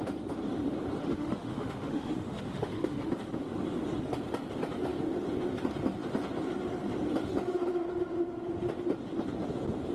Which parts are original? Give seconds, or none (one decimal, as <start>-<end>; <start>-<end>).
0.0-1.0; 3.1-9.9